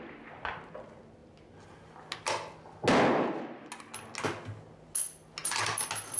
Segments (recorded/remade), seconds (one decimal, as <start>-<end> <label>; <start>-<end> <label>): 0.0-6.2 recorded